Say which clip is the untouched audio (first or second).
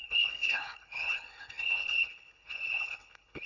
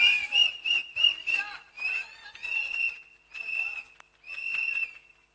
second